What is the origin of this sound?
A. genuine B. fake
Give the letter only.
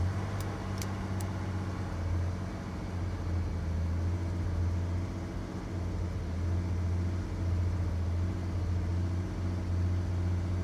A